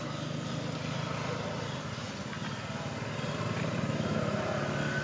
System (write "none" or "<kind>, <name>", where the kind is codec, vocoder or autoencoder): none